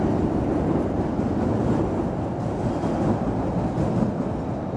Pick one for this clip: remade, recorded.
recorded